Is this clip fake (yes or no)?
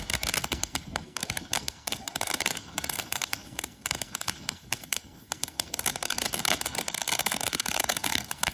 yes